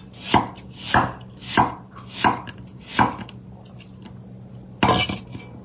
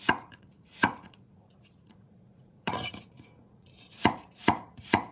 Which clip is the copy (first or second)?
second